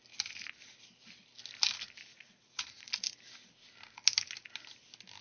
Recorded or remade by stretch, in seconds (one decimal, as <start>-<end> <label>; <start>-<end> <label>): 0.0-2.1 recorded; 2.1-2.9 remade; 2.9-5.2 recorded